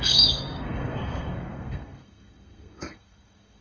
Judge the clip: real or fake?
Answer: fake